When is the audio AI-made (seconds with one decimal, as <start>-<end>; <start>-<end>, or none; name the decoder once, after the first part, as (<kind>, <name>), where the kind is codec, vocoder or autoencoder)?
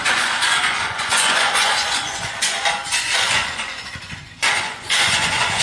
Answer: 0.0-5.6 (vocoder, Vocos)